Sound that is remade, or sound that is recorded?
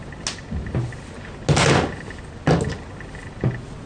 recorded